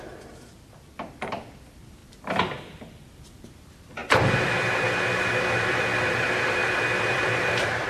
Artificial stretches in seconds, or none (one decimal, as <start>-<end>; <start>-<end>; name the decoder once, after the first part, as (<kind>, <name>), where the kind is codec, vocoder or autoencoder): 0.0-4.0 (vocoder, BigVGAN v2); 5.6-6.6; 7.1-7.9